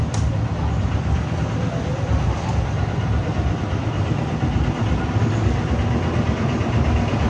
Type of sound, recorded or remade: recorded